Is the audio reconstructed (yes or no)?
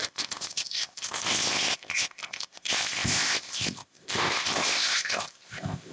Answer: yes